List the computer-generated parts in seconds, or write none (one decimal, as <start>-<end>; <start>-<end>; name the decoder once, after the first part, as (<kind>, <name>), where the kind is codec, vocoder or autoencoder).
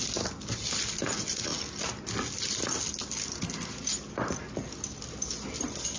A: none